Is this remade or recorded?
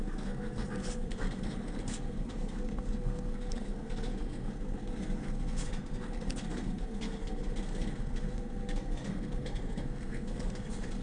remade